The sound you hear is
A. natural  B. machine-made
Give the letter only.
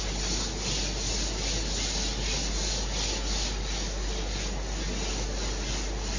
A